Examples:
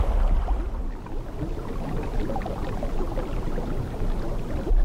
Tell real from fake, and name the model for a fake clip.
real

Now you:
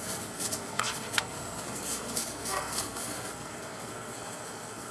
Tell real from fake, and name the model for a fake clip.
fake, codec, SNAC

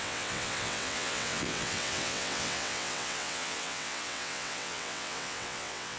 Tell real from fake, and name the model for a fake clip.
fake, vocoder, WaveNeXt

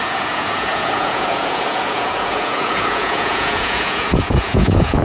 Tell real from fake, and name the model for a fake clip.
fake, vocoder, Vocos